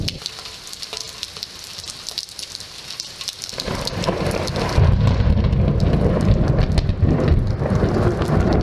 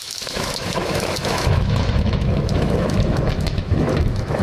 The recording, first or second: first